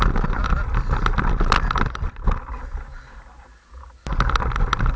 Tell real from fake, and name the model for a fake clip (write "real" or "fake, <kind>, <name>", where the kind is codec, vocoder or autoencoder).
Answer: real